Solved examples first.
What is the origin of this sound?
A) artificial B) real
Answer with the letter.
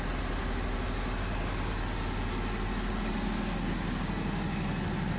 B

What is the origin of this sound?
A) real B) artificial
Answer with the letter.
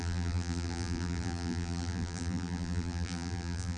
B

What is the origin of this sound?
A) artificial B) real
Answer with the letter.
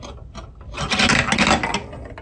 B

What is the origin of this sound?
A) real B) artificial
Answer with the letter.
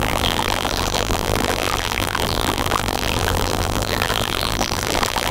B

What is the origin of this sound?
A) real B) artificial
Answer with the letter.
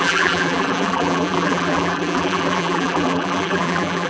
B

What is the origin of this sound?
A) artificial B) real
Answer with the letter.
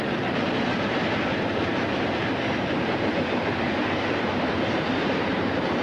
A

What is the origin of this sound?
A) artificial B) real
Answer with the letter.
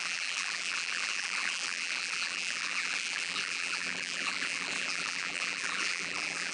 A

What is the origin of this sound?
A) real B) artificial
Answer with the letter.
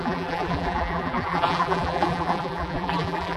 B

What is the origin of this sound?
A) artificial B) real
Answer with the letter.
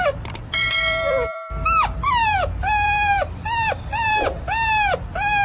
A